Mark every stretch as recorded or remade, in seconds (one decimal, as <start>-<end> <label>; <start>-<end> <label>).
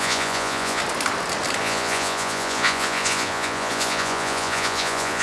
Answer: 0.0-0.8 remade; 0.8-1.6 recorded; 1.6-5.2 remade